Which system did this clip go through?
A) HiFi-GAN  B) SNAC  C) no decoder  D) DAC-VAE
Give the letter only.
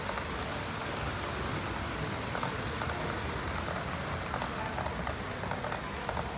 C